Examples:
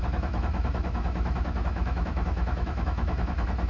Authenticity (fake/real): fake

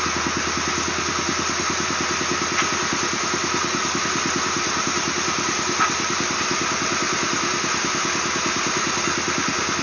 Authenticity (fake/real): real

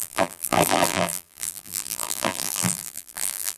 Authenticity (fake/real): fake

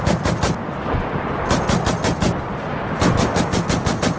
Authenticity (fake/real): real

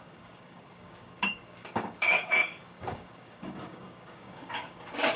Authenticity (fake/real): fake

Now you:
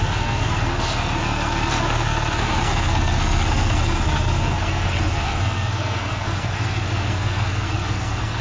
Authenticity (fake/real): fake